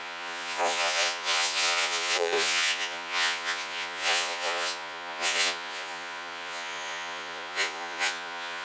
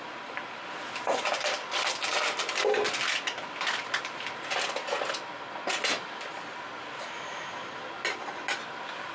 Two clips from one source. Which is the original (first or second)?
second